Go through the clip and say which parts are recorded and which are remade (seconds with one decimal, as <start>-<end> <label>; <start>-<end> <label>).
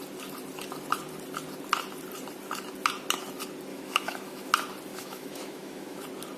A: 0.0-3.7 recorded; 3.7-4.5 remade; 4.5-4.9 recorded; 4.9-6.0 remade; 6.0-6.4 recorded